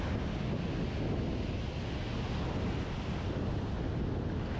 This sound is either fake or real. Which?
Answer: real